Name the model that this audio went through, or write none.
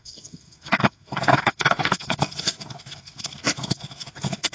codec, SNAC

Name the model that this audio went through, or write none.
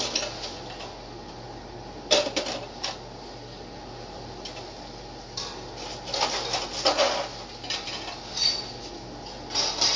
none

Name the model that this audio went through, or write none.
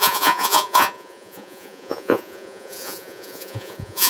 vocoder, Vocos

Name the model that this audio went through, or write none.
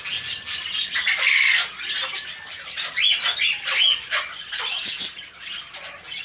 none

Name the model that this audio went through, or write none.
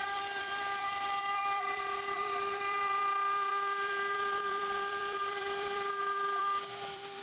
vocoder, BigVGAN v2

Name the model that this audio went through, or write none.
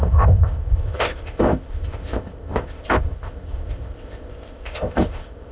codec, ZipCodec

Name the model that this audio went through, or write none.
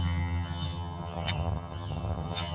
vocoder, HiFi-GAN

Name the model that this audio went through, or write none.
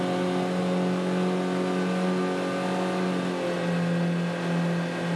none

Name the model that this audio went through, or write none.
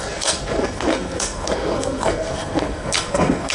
codec, SNAC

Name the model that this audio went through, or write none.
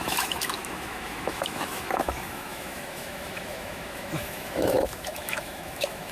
autoencoder, DAC-VAE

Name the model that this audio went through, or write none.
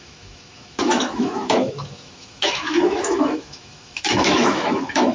autoencoder, DAC-VAE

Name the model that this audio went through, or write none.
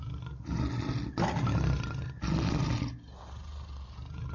none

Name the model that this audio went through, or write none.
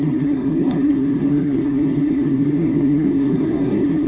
codec, SNAC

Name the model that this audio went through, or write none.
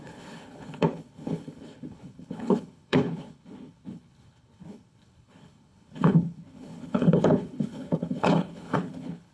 codec, HILCodec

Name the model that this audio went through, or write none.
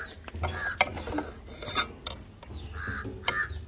none